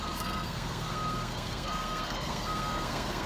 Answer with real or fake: fake